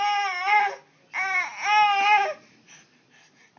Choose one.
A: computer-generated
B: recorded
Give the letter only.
B